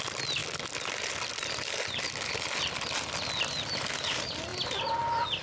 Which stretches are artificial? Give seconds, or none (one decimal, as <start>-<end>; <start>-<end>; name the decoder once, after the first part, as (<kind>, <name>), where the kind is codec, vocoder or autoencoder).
none